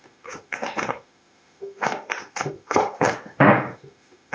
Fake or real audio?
fake